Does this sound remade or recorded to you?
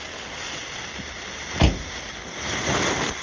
recorded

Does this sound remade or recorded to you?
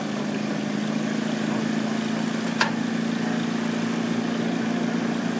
recorded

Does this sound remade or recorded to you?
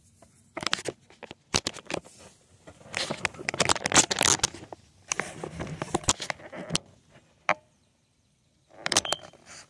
recorded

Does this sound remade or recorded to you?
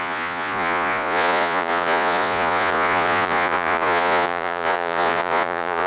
remade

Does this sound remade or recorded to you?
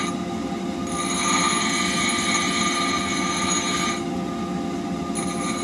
recorded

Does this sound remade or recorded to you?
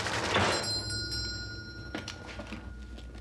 recorded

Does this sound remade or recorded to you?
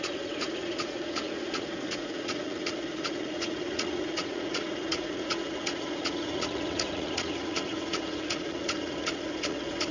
remade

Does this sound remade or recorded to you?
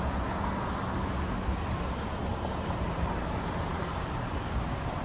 recorded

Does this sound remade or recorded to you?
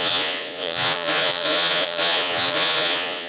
remade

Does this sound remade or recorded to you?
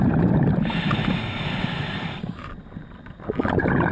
recorded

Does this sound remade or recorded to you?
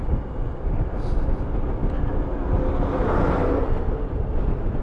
recorded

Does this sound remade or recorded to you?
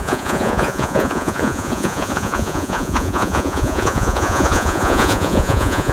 remade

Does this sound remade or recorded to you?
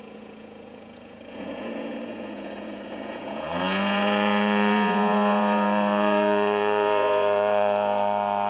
remade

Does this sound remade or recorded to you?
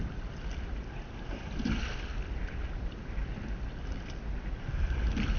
recorded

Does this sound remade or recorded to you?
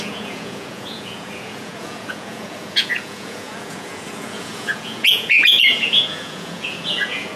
remade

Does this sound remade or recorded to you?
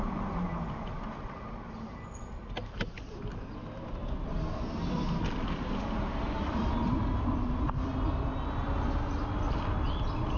recorded